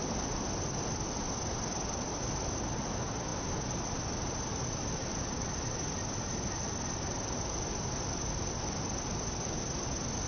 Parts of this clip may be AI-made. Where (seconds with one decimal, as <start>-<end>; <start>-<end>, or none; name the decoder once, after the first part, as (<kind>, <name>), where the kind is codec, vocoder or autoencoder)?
none